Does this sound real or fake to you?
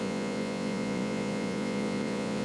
fake